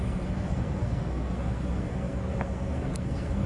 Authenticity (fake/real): fake